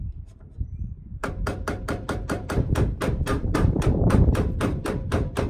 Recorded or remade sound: remade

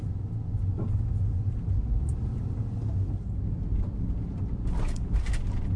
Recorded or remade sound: recorded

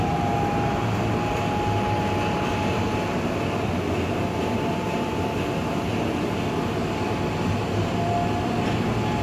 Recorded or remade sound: recorded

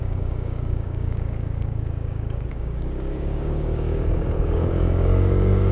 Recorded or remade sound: remade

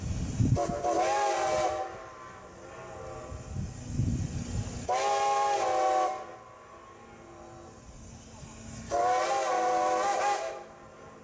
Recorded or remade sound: recorded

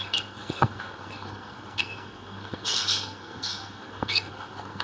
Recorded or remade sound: remade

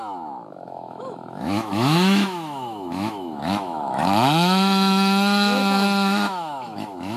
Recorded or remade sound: remade